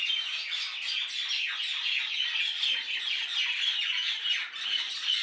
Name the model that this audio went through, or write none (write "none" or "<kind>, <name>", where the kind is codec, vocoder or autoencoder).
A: none